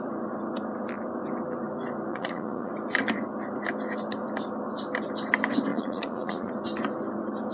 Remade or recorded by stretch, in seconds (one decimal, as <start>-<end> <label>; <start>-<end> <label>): 0.0-2.1 recorded; 2.1-2.7 remade; 2.7-5.7 recorded; 5.7-6.5 remade; 6.5-7.5 recorded